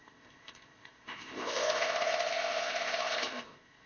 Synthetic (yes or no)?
yes